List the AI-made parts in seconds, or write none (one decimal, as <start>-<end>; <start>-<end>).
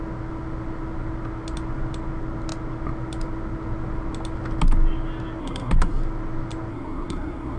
5.4-6.0; 6.7-7.6